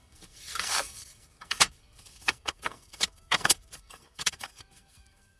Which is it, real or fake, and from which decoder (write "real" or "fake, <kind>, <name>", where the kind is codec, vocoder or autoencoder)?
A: fake, codec, SNAC